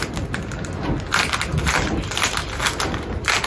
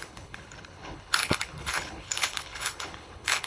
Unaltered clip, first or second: first